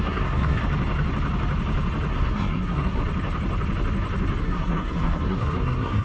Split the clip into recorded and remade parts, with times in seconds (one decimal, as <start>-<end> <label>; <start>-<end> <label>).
0.0-0.6 remade; 0.6-2.1 recorded; 2.1-3.0 remade; 3.0-4.4 recorded; 4.4-6.0 remade